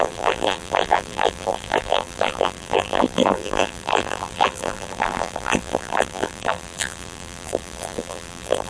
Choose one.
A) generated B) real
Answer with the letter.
A